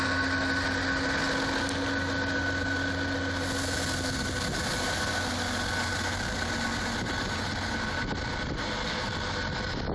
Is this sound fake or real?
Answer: real